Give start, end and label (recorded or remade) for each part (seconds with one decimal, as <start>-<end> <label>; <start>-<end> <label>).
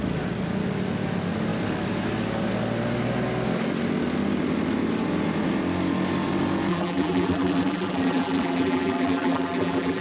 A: 0.0-6.7 recorded; 6.7-10.0 remade